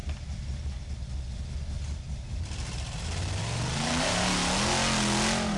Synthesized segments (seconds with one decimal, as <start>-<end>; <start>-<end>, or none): none